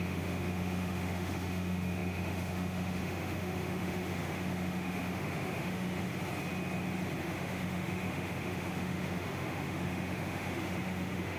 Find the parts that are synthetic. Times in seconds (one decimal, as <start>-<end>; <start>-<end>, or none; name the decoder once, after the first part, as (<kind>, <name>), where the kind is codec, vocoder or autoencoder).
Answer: 0.0-6.1 (autoencoder, DAC-VAE); 7.2-11.4